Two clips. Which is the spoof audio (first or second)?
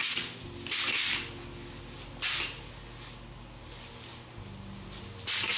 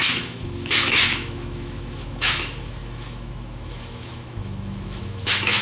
second